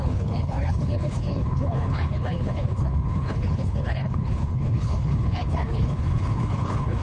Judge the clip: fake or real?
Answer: fake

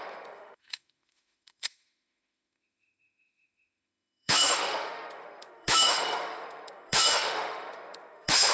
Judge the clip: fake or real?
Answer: fake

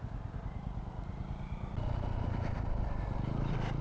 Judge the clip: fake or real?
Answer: real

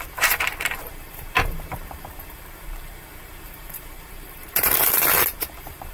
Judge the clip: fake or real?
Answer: fake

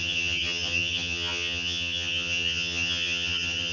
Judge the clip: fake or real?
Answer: fake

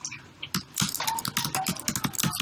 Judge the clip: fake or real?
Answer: real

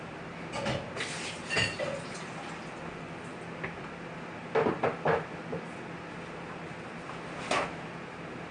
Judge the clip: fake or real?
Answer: real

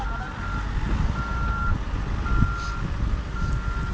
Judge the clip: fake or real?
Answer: real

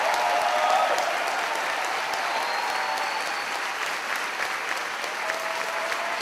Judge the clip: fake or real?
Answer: real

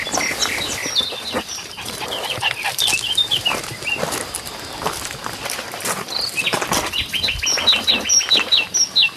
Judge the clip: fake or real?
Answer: real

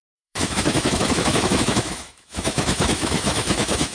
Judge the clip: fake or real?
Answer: fake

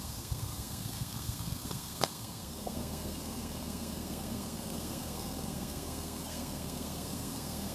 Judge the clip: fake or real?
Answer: fake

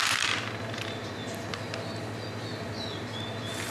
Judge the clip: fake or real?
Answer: real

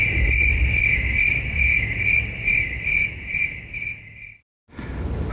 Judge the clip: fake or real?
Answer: real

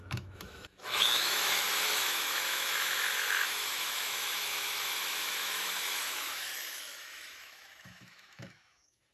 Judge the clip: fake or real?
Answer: fake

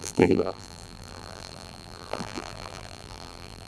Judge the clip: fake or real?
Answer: fake